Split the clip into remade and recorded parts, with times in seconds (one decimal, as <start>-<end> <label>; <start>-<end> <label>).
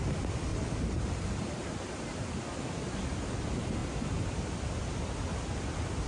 0.0-0.5 recorded; 0.5-2.3 remade; 2.3-6.1 recorded